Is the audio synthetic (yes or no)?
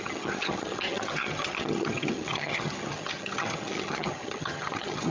yes